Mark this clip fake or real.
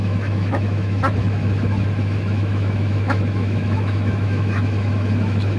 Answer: fake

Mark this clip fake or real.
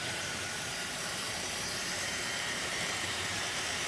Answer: fake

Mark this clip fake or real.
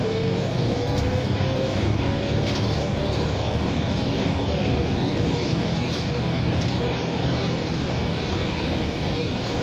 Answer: fake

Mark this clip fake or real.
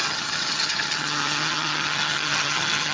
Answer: fake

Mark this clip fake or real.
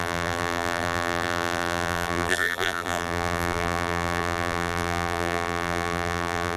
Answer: fake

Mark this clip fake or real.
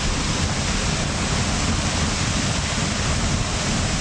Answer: real